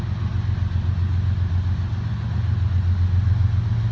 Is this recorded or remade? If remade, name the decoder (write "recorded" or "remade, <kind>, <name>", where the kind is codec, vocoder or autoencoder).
recorded